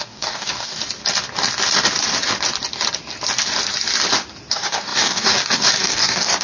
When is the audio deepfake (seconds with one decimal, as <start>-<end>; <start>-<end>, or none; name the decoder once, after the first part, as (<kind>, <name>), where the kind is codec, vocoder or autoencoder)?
0.0-0.8 (codec, DAC); 4.5-6.4